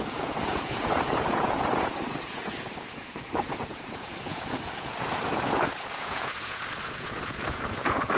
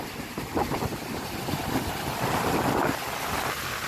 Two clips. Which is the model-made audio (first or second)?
first